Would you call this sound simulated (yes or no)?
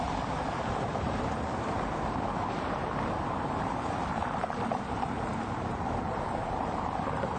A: yes